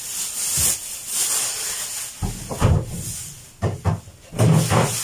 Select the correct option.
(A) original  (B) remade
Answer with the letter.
A